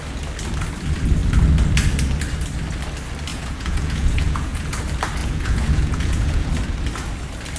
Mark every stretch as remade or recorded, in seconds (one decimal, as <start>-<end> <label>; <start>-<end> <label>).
0.0-3.3 recorded; 3.3-4.8 remade; 4.8-5.2 recorded; 5.2-6.5 remade; 6.5-7.6 recorded